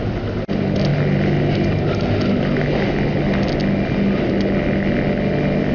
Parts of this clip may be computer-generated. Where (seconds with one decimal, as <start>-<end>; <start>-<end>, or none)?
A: none